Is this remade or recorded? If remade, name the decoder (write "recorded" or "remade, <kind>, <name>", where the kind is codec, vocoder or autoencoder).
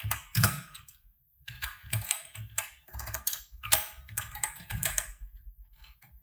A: remade, codec, SNAC